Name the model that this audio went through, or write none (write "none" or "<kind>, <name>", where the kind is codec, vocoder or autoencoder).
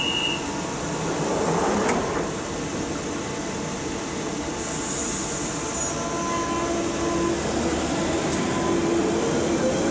none